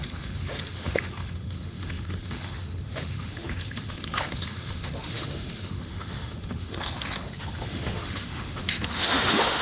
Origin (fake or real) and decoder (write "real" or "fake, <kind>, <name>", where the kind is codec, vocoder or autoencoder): fake, autoencoder, DAC-VAE